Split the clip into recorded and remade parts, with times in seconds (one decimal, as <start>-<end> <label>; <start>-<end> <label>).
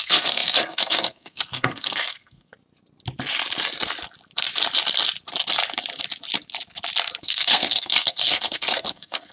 0.0-2.5 remade; 2.5-7.2 recorded; 7.2-9.3 remade